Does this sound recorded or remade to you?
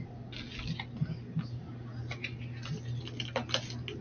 recorded